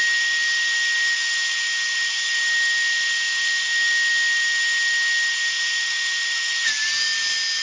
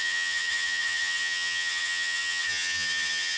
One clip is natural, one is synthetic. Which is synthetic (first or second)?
second